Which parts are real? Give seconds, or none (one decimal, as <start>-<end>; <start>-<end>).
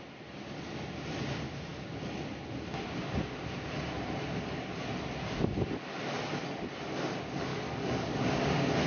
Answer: 0.0-7.5; 8.2-8.9